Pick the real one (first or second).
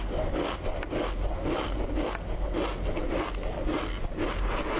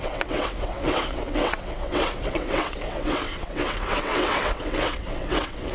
first